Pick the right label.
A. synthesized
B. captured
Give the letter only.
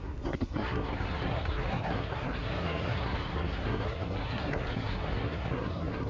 A